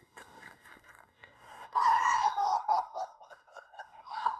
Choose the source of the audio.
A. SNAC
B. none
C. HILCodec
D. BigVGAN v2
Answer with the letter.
A